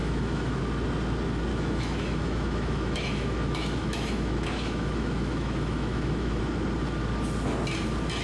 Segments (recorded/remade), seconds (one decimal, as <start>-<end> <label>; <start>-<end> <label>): 0.0-0.6 remade; 0.6-1.5 recorded; 1.5-6.4 remade; 6.4-8.2 recorded